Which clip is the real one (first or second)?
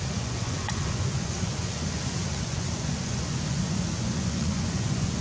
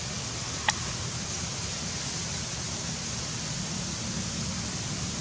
second